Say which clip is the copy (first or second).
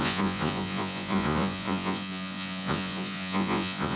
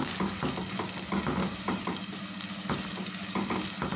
first